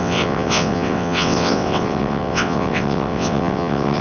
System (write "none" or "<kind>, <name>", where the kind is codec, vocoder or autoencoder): vocoder, WaveNeXt